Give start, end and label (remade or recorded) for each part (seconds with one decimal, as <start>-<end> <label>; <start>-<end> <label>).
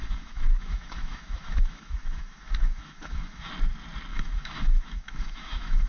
0.0-3.5 remade; 3.5-4.1 recorded; 4.1-5.9 remade